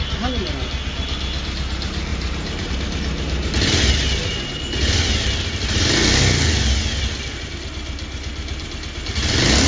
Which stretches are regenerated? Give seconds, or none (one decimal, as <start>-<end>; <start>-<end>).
2.1-2.7